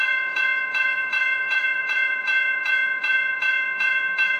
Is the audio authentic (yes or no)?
no